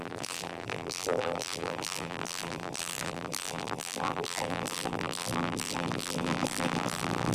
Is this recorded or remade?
remade